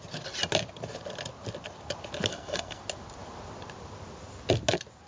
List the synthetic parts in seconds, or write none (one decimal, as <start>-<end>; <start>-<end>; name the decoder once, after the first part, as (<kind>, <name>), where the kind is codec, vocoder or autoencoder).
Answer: 2.3-2.8 (codec, SNAC)